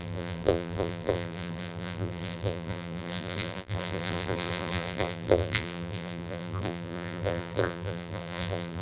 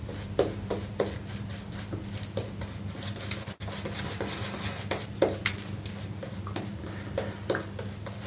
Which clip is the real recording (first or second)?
second